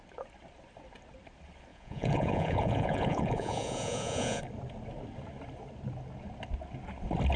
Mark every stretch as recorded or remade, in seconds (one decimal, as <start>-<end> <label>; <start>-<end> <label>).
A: 0.0-1.7 recorded; 1.7-4.4 remade; 4.4-7.4 recorded